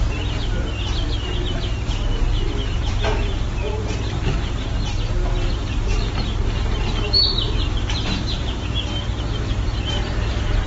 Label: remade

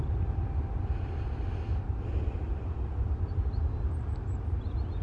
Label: recorded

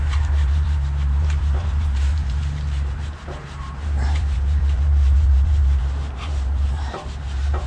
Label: remade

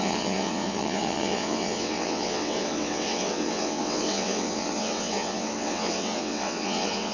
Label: remade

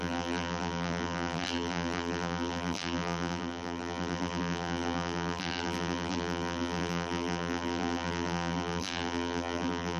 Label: remade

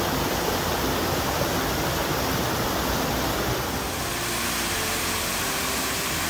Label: recorded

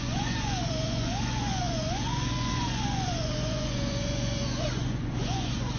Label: remade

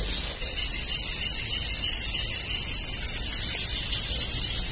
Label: recorded